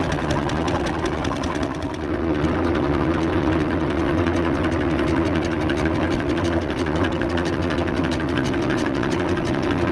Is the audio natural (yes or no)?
no